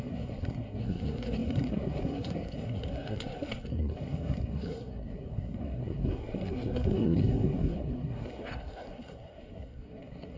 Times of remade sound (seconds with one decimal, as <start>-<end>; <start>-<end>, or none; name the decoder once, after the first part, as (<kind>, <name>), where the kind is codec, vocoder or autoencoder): 0.0-10.4 (codec, SNAC)